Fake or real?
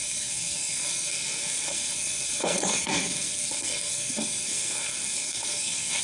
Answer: fake